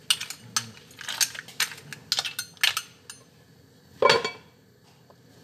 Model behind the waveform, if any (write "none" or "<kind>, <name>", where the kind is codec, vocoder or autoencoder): none